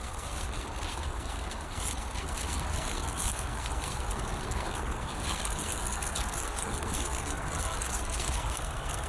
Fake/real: fake